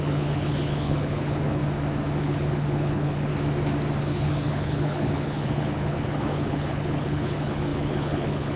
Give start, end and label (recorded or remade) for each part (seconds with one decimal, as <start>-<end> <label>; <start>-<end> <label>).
0.0-1.6 remade; 1.6-2.2 recorded; 2.2-3.3 remade; 3.3-4.0 recorded; 4.0-8.6 remade